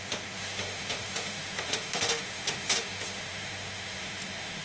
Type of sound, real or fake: fake